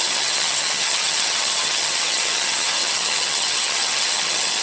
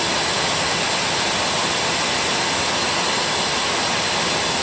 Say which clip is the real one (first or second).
second